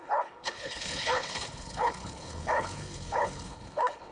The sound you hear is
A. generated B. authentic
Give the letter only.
A